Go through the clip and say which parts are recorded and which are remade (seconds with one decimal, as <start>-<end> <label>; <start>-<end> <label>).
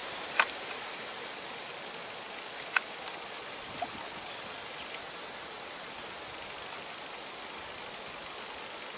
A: 0.0-0.8 remade; 0.8-9.0 recorded